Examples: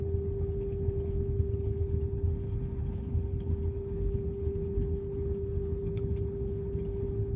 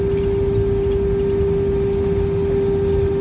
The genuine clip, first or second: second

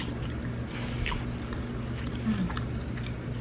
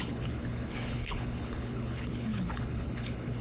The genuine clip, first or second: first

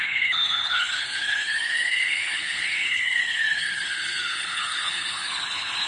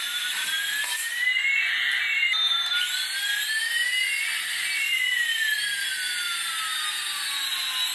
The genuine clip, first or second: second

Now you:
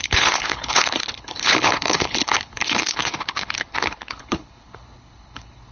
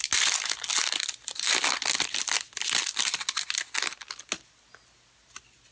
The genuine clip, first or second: second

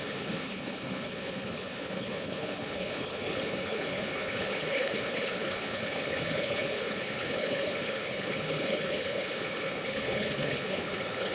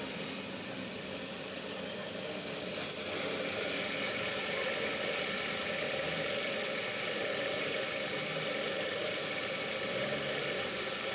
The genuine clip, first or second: second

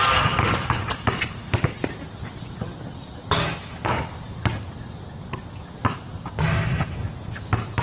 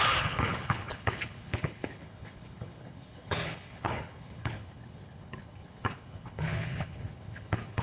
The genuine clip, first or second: first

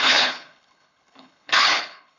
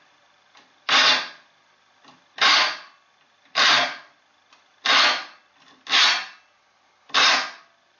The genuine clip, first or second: second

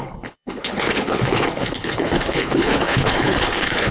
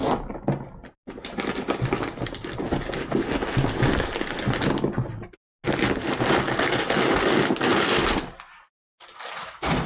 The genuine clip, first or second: second